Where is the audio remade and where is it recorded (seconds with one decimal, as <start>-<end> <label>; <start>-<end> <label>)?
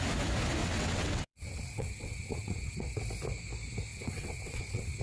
0.0-0.6 recorded; 0.6-3.0 remade; 3.0-3.9 recorded; 3.9-5.0 remade